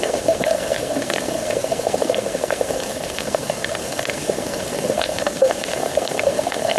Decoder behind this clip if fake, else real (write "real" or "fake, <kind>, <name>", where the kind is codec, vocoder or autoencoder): fake, codec, SNAC